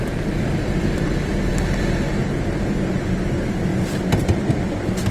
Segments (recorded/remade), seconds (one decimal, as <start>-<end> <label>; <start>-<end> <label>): 0.0-3.7 remade; 3.7-4.2 recorded; 4.2-5.1 remade